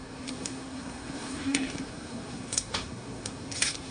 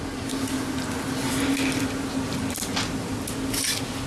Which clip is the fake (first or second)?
first